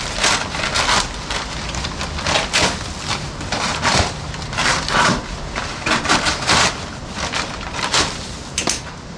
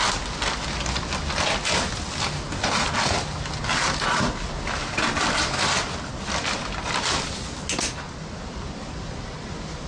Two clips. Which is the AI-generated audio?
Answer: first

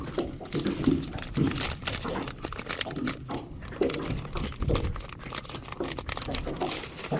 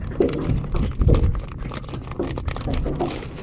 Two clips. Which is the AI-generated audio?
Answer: first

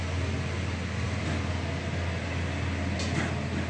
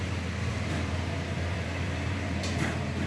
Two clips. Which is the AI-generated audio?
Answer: second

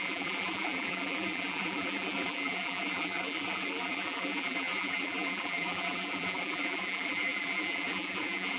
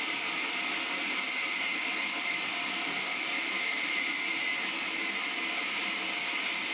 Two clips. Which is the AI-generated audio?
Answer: first